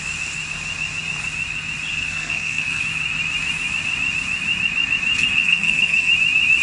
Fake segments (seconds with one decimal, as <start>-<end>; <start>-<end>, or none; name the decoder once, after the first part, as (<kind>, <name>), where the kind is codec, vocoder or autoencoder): 1.9-2.8 (codec, SNAC); 5.1-6.1